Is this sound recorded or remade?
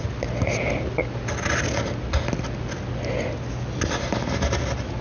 recorded